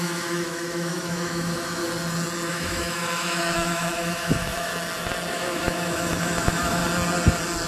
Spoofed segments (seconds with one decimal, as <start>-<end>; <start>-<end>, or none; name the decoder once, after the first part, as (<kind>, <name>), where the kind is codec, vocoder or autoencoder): 0.0-1.8 (autoencoder, DAC-VAE); 2.5-4.7; 5.3-6.8